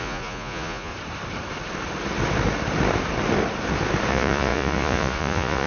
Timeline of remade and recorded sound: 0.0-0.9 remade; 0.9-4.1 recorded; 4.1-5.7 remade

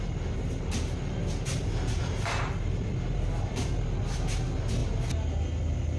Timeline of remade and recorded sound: 0.0-6.0 recorded

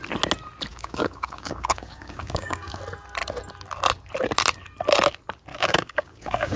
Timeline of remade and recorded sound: 0.0-0.7 recorded; 0.7-2.8 remade; 2.8-5.5 recorded; 5.5-6.6 remade

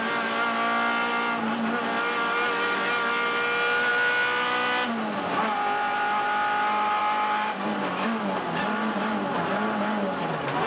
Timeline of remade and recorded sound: 0.0-10.7 recorded

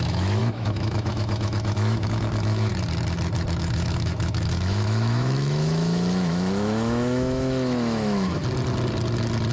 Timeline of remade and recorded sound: 0.0-2.7 remade; 2.7-3.6 recorded; 3.6-8.4 remade; 8.4-9.5 recorded

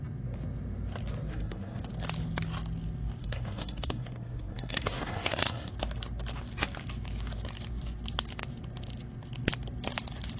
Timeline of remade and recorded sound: 0.0-1.3 recorded; 1.3-1.8 remade; 1.8-3.2 recorded; 3.2-5.7 remade; 5.7-10.4 recorded